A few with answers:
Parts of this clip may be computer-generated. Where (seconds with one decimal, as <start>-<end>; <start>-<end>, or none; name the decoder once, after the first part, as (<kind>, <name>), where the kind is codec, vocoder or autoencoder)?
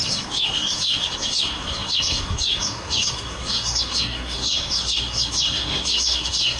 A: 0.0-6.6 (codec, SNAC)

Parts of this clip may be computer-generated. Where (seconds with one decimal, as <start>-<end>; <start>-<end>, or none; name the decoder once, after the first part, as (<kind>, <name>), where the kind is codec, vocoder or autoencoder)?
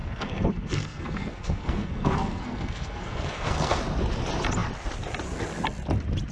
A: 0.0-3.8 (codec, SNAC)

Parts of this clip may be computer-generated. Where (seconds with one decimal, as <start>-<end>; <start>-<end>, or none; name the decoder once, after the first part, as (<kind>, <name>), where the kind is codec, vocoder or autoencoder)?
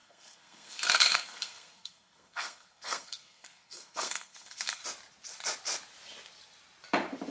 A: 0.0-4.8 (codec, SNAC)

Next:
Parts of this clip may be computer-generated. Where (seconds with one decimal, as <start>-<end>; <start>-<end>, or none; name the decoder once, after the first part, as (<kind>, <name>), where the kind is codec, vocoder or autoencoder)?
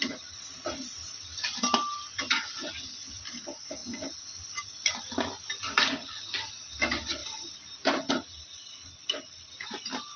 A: 7.2-8.1 (vocoder, BigVGAN v2)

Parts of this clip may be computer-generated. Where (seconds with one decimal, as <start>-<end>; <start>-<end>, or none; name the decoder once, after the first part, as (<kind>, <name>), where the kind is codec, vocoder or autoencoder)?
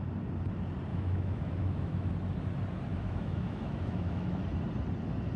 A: 0.9-2.1 (autoencoder, DAC-VAE); 2.9-4.4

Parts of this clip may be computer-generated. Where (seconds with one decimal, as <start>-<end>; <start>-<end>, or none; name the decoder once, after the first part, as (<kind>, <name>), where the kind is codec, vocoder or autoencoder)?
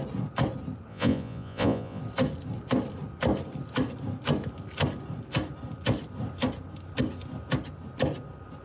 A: 0.9-2.0 (vocoder, Vocos)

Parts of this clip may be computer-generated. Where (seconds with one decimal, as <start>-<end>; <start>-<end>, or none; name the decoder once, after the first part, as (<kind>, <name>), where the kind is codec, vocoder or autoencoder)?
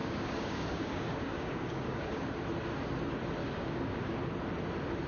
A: 0.0-2.2 (codec, DAC); 3.4-4.2